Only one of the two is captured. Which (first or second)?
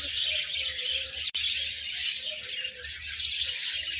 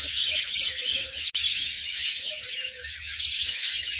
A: first